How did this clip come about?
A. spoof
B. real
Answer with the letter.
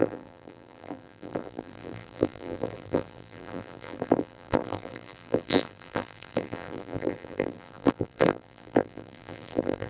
A